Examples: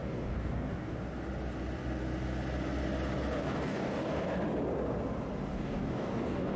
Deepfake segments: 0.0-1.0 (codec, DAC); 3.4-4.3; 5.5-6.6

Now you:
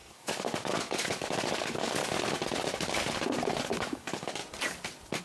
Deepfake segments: 0.0-2.0 (codec, DAC); 3.6-4.4